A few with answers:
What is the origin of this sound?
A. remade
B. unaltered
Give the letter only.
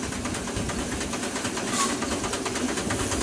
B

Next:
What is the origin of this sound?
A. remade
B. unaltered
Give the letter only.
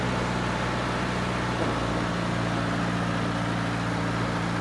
B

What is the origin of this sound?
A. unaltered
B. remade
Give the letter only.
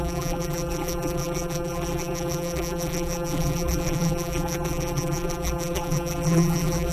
B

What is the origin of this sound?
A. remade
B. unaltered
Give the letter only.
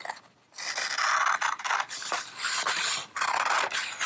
B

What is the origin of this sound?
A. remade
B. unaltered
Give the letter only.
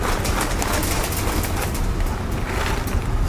A